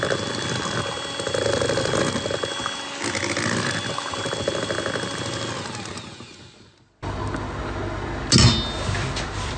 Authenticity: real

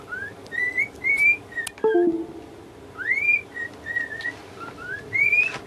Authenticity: real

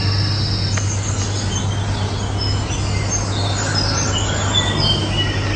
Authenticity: real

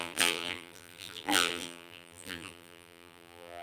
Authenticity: fake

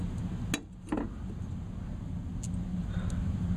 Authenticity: real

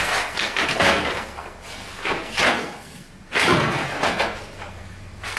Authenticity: fake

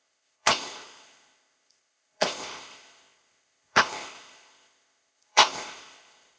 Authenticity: fake